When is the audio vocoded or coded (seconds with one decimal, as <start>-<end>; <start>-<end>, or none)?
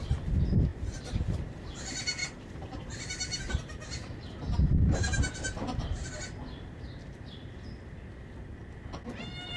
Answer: 0.7-1.6; 2.2-6.1